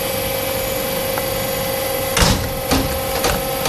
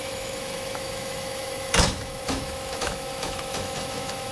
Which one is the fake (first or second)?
second